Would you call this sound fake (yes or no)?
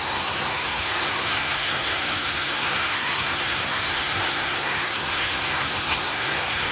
yes